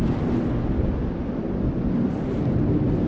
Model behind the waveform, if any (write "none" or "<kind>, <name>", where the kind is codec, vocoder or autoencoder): none